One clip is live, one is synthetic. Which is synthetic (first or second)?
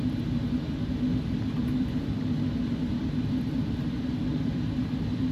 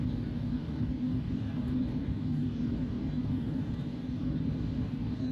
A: second